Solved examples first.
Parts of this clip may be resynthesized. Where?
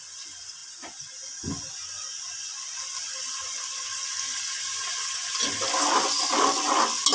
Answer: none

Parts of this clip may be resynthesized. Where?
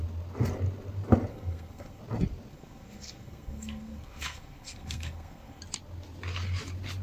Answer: 1.3-2.0 (codec, SNAC); 2.5-5.6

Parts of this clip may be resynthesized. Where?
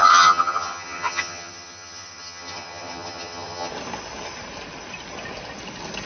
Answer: 0.0-3.7 (vocoder, HiFi-GAN)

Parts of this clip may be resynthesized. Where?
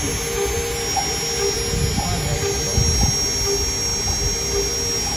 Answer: none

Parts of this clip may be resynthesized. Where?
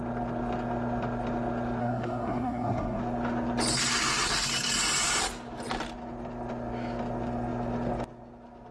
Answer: 1.8-3.0 (codec, SNAC)